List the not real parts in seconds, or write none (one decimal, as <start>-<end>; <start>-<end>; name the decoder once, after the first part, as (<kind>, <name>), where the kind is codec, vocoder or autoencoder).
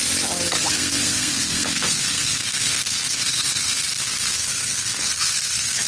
0.7-5.9 (codec, SNAC)